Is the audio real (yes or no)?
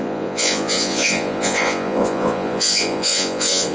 no